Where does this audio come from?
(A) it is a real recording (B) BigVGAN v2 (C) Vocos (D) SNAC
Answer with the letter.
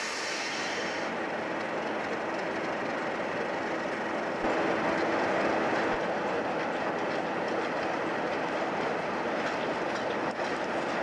A